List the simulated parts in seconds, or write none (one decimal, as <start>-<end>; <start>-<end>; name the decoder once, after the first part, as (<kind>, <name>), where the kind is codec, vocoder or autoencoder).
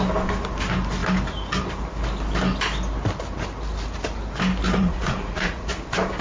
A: 4.8-5.7 (vocoder, Vocos)